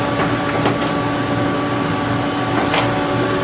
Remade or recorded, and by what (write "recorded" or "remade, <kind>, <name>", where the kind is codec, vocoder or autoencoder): recorded